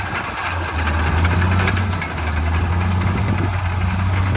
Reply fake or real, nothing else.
real